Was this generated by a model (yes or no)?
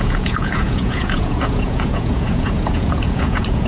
yes